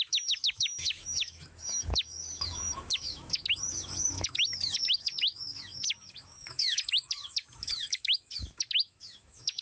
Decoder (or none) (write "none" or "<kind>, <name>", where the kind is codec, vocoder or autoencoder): autoencoder, DAC-VAE